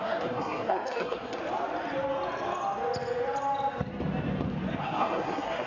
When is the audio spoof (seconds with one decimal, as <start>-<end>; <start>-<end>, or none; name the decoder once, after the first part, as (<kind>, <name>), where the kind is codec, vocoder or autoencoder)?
0.0-1.4 (codec, SNAC); 4.8-5.7